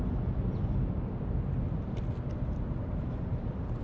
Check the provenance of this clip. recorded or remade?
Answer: recorded